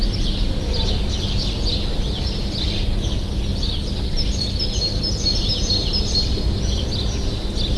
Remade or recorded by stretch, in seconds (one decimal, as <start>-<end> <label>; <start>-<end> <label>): 0.0-7.8 recorded

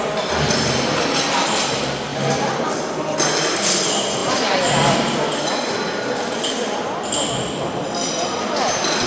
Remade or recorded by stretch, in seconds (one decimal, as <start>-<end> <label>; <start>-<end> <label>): 0.0-9.1 recorded

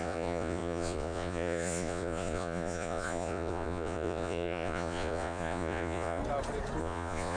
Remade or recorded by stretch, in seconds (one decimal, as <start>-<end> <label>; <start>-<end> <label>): 0.0-6.2 remade; 6.2-6.8 recorded; 6.8-7.4 remade

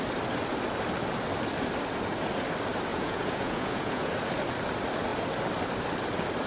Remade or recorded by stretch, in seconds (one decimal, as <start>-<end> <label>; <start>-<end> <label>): 0.0-2.9 recorded; 2.9-4.1 remade; 4.1-6.5 recorded

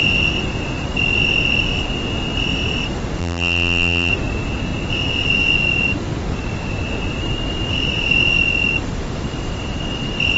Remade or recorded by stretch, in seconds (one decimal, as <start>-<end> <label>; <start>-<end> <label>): 0.0-3.2 recorded; 3.2-4.1 remade; 4.1-10.4 recorded